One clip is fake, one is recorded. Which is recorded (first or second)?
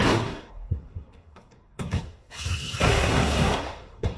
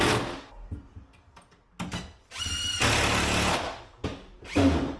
second